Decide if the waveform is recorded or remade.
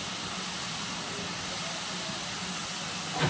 recorded